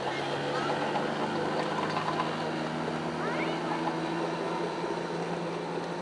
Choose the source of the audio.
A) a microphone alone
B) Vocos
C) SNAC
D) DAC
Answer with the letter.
A